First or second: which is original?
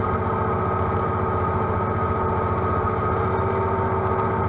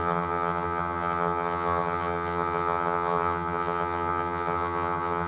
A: first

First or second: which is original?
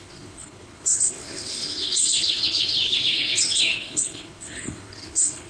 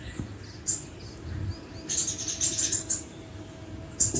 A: second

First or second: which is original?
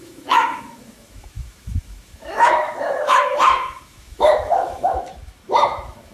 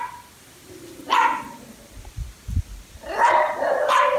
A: second